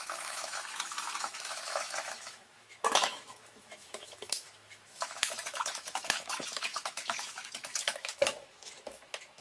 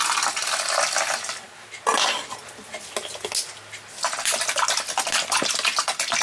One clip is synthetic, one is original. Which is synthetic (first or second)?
first